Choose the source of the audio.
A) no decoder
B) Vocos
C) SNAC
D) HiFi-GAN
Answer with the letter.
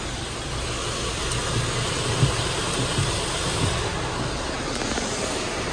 A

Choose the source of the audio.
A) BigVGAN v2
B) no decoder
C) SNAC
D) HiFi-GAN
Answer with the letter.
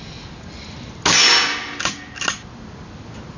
B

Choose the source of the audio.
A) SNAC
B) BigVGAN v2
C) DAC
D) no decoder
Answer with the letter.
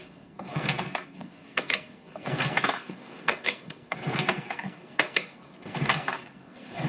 A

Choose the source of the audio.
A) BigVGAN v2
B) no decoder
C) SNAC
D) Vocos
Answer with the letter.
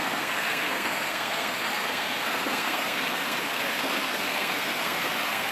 C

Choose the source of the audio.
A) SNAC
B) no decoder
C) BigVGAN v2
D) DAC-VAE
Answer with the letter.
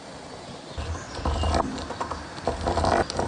B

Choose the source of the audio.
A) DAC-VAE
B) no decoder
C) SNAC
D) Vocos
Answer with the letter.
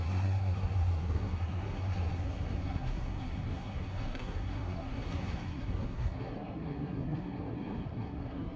C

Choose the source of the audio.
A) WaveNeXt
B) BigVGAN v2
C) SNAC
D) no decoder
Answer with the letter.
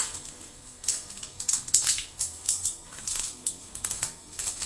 C